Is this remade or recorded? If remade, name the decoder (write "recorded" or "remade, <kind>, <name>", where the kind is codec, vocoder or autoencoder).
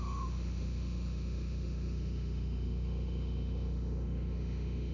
remade, autoencoder, DAC-VAE